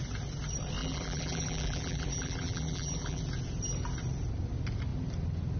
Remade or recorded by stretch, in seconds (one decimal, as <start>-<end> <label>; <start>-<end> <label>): 0.0-0.8 recorded; 0.8-3.2 remade; 3.2-5.6 recorded